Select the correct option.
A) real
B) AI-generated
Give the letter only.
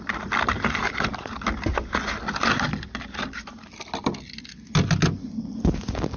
A